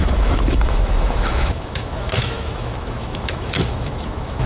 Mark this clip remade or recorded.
remade